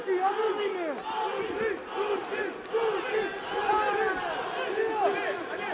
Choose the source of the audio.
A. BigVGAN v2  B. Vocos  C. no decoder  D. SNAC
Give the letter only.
C